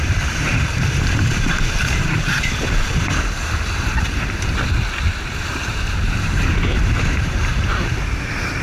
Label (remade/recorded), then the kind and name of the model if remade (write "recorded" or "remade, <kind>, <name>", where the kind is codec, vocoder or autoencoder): remade, vocoder, BigVGAN v2